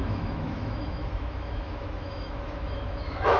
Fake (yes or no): yes